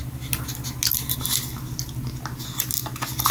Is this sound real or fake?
real